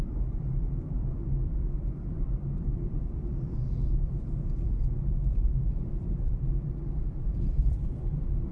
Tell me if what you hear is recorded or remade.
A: remade